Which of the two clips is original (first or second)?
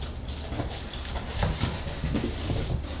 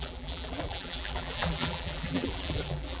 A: first